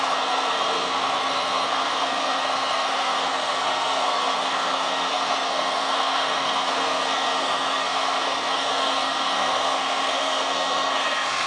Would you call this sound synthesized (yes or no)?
yes